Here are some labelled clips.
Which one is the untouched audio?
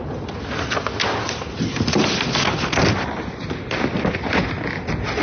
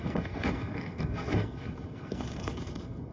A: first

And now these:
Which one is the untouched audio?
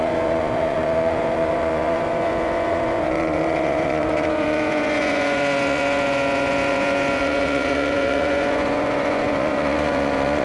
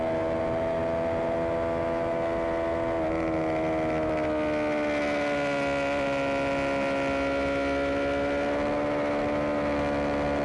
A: second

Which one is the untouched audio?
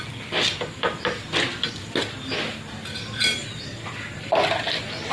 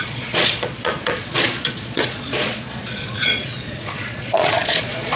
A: first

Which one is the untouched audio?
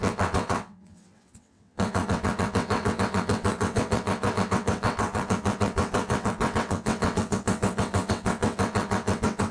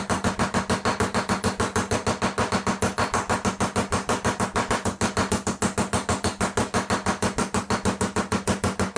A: second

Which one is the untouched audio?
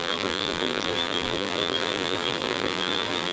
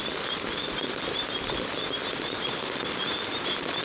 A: second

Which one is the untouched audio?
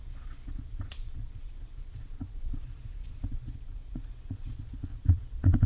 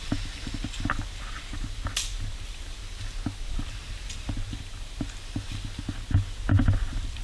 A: second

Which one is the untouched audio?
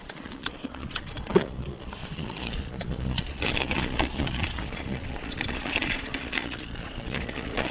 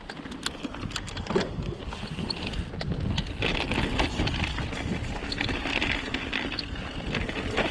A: second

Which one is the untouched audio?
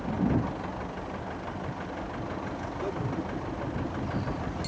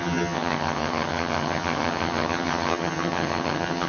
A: first